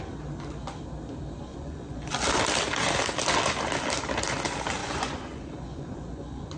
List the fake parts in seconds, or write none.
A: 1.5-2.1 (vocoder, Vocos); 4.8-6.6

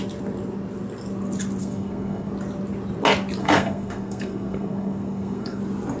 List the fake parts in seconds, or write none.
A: 1.6-2.3 (codec, SNAC); 3.4-5.6

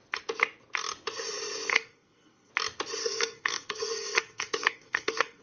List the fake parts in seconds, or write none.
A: 1.7-2.5 (codec, SNAC); 3.0-5.4

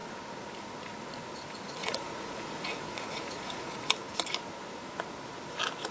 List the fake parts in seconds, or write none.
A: 1.8-3.9 (vocoder, Vocos)

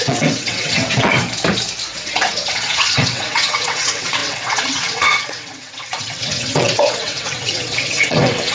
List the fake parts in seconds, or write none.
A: 0.0-1.2 (vocoder, WaveNeXt); 1.9-8.5

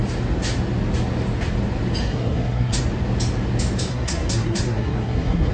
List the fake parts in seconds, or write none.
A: 2.0-2.8 (codec, SNAC); 3.9-5.5

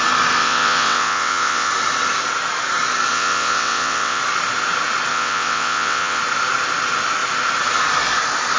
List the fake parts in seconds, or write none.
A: 0.4-1.7 (vocoder, WaveNeXt); 3.1-4.2; 5.1-6.2